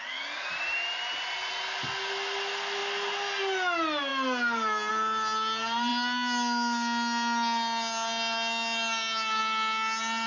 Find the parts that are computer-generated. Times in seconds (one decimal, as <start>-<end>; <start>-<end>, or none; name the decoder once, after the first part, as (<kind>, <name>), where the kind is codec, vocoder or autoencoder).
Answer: none